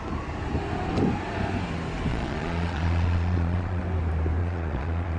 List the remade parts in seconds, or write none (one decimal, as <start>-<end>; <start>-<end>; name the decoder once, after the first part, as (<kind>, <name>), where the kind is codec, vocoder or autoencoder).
2.1-3.8 (vocoder, Vocos); 4.4-5.2